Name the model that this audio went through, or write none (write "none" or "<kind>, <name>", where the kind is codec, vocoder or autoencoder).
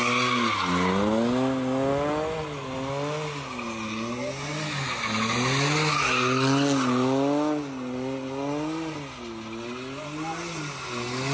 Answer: none